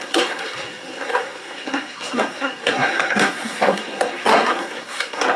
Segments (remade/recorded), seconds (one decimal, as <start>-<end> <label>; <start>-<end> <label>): 0.0-5.4 remade